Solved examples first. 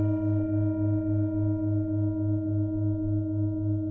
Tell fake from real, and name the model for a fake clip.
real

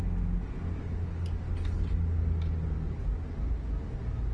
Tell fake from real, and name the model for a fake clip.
real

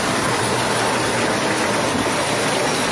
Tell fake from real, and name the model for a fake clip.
real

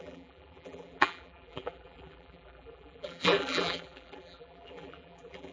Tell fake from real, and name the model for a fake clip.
fake, vocoder, BigVGAN v2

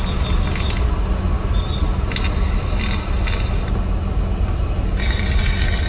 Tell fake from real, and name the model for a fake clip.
real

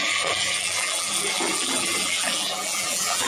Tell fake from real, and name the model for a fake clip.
fake, vocoder, BigVGAN v2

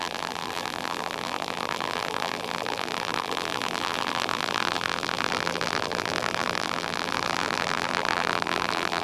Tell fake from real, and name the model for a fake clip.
fake, vocoder, BigVGAN v2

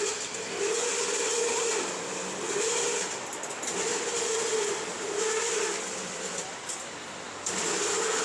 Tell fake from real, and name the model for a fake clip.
real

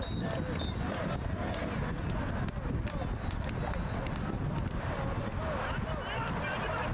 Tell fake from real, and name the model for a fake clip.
real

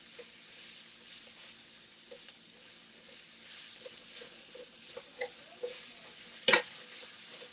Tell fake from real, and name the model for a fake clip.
real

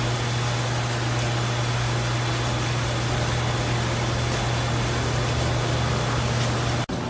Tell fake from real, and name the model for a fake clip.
real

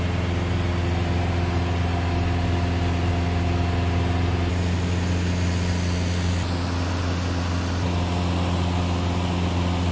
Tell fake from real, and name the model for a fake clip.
real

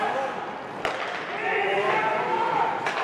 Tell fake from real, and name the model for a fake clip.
real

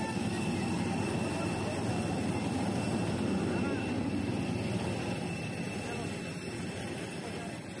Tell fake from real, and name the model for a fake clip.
real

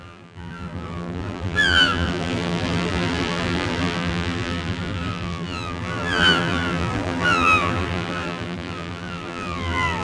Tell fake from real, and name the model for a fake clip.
fake, vocoder, BigVGAN v2